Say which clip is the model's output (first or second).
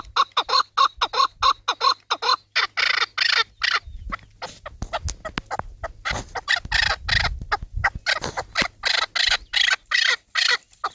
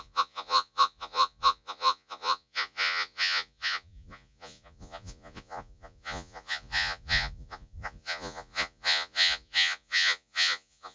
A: second